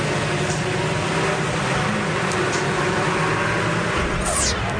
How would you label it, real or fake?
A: real